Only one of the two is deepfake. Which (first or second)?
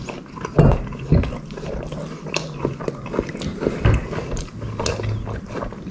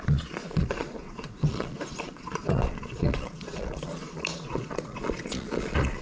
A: second